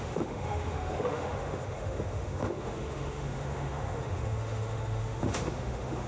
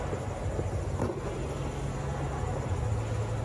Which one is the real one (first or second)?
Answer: second